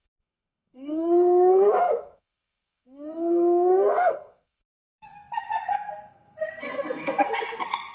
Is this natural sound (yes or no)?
no